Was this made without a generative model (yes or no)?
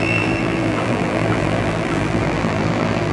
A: no